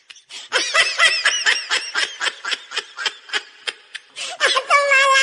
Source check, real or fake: real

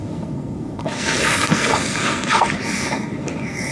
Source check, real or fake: fake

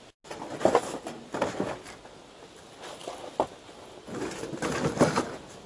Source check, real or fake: real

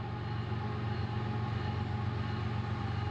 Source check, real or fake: real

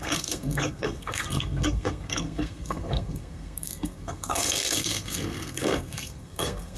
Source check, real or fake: fake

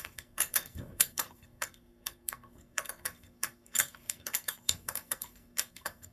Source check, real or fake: fake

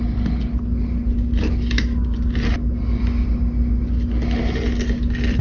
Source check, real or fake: real